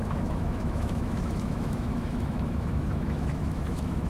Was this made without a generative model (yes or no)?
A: no